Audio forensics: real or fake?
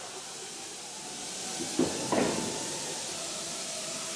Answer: real